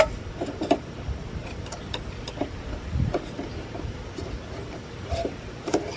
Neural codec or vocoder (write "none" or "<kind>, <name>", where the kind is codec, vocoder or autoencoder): vocoder, BigVGAN v2